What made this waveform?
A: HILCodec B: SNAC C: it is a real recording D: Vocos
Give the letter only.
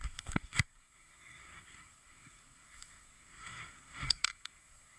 B